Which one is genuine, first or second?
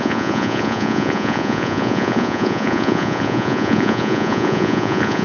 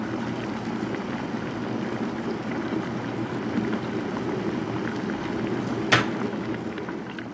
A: second